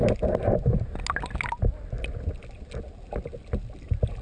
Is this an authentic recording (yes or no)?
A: yes